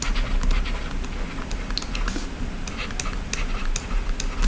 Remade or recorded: recorded